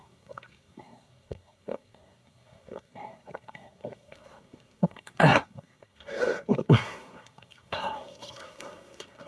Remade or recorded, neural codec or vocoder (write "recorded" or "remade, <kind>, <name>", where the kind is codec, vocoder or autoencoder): remade, codec, SNAC